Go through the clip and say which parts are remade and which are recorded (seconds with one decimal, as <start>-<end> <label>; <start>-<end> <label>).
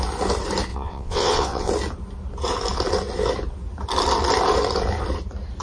0.0-0.7 recorded; 0.7-1.7 remade; 1.7-5.6 recorded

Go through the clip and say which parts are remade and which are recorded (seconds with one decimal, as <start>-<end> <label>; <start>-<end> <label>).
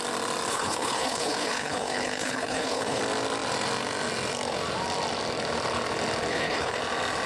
0.0-0.5 recorded; 0.5-3.0 remade; 3.0-6.3 recorded; 6.3-6.8 remade; 6.8-7.3 recorded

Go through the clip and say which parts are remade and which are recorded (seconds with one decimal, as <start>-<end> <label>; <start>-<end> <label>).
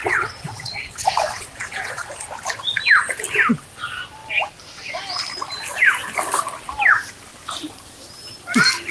0.0-2.1 remade; 2.1-8.9 recorded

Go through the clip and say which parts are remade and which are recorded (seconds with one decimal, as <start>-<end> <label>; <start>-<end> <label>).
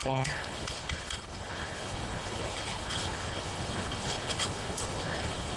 0.0-5.6 remade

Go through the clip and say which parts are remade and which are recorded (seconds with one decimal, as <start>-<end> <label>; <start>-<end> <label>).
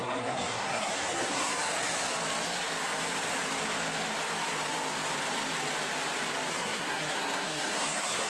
0.0-1.5 remade; 1.5-6.5 recorded; 6.5-8.3 remade